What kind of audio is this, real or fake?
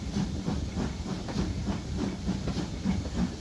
real